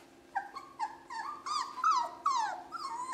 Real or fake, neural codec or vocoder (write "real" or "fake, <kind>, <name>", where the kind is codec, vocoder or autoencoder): real